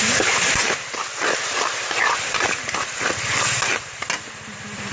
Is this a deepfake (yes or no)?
no